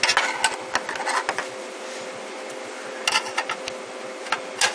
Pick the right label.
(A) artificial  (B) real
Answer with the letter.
B